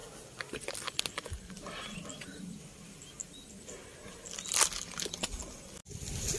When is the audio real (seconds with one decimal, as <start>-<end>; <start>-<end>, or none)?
0.0-6.4